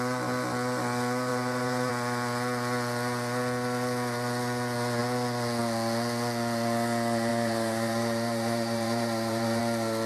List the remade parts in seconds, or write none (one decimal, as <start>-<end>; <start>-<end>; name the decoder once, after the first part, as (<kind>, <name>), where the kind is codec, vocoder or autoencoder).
1.3-1.9 (vocoder, BigVGAN v2); 7.3-9.6